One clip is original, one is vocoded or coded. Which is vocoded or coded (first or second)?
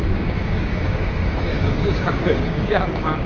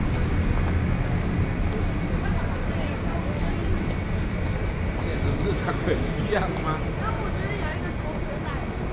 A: first